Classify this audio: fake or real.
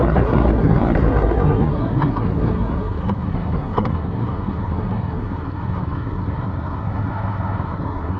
fake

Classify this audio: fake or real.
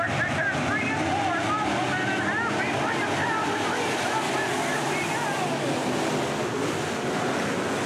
real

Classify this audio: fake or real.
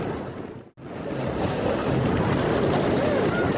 real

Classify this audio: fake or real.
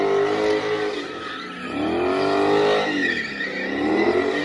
real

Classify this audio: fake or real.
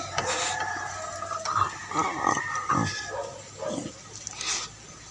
real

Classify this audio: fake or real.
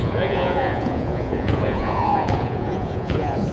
fake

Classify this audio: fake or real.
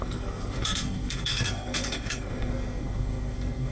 fake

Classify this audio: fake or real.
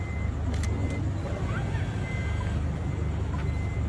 real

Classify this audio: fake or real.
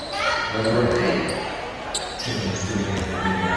real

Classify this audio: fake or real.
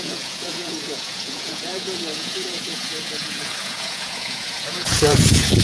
fake